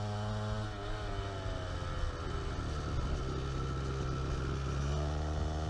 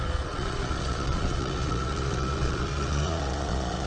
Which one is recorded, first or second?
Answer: first